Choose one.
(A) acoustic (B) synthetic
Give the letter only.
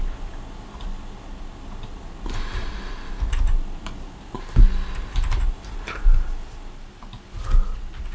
A